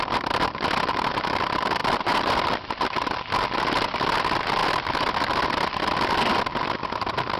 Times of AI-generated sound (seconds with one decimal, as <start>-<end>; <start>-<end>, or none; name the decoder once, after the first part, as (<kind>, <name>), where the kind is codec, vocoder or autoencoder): 1.8-3.6 (vocoder, BigVGAN v2); 4.6-6.5